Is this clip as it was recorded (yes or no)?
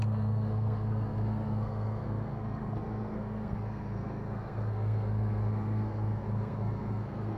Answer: no